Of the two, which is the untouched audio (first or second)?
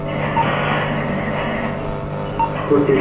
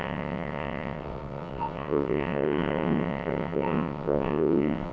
first